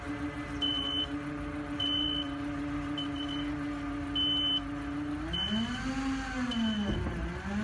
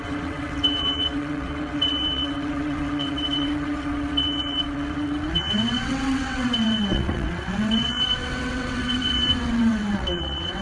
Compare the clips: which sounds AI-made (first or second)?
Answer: second